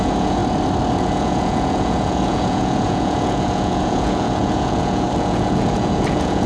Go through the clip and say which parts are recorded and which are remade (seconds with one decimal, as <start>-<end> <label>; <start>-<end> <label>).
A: 0.0-0.4 remade; 0.4-0.9 recorded; 0.9-6.5 remade